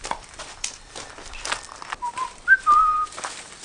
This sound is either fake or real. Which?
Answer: real